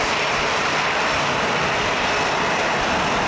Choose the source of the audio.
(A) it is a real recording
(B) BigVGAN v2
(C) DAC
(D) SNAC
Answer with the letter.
B